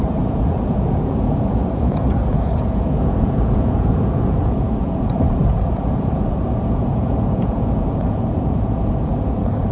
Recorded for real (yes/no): no